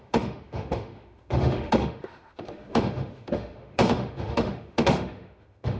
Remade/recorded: remade